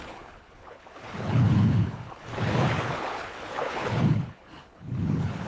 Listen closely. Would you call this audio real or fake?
fake